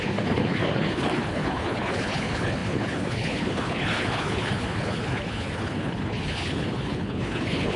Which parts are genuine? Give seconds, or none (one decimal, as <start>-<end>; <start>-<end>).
none

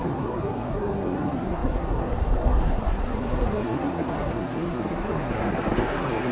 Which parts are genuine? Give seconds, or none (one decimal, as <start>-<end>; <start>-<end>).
none

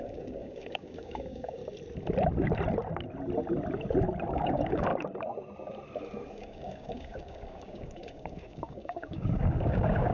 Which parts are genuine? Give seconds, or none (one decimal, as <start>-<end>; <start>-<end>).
1.6-4.3; 4.9-6.3

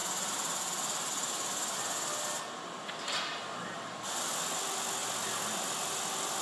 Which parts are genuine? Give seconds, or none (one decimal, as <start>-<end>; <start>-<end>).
0.0-6.4

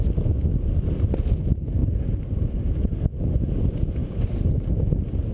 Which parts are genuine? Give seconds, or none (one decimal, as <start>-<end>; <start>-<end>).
0.0-4.0; 4.7-5.3

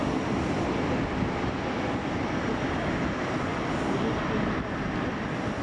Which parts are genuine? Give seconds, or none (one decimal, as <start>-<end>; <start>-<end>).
0.0-5.6